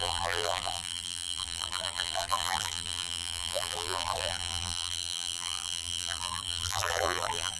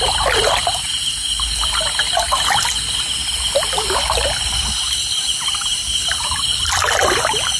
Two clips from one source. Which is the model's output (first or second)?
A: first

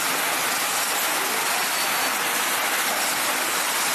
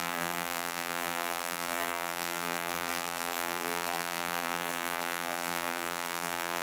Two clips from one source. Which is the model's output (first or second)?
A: second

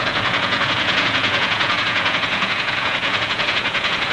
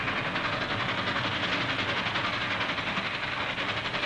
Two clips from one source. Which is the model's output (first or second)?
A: first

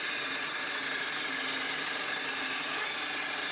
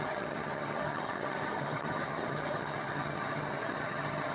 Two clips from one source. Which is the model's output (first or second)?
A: second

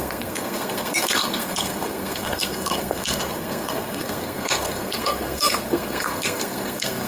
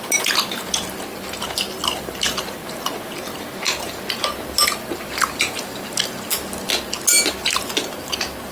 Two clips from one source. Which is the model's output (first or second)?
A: first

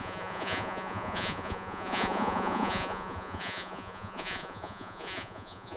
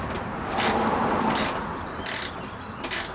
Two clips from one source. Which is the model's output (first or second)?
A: first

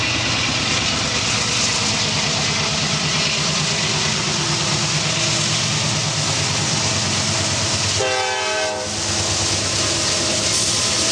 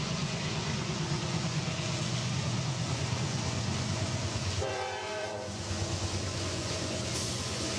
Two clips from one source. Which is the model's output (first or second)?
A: second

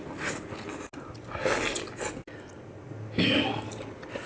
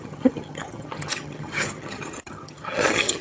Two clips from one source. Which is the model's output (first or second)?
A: second